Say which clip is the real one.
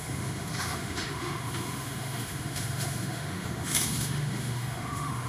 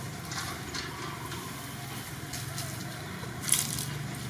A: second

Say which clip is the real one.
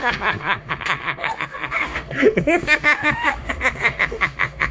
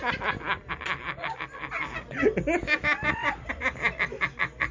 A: second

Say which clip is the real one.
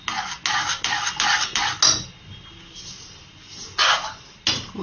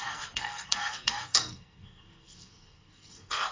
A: first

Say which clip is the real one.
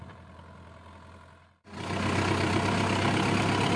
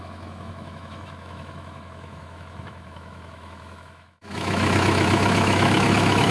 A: first